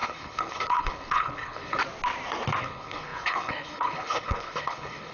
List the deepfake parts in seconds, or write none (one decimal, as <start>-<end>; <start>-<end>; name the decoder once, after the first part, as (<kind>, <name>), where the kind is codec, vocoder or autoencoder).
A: 0.0-1.8 (codec, HILCodec); 2.6-5.1

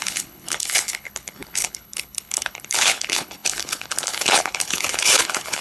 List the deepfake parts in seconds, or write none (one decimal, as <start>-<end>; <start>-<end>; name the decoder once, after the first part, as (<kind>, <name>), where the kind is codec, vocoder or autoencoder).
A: 0.0-5.6 (codec, HILCodec)

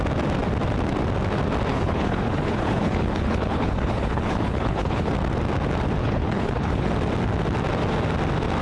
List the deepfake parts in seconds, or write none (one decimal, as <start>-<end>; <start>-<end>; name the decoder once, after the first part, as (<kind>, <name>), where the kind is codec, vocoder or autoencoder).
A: 1.7-5.1 (codec, HILCodec); 6.0-6.9

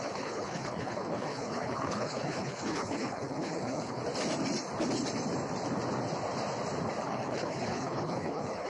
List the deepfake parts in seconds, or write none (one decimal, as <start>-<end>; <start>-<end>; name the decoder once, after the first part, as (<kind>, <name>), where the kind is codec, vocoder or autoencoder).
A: 0.0-4.0 (codec, HILCodec); 7.0-8.7

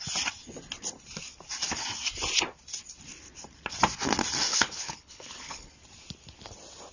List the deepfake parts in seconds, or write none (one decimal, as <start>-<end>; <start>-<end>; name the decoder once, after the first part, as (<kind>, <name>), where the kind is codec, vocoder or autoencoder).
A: 4.5-5.7 (codec, HILCodec)